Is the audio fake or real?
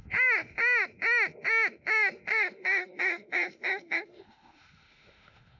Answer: fake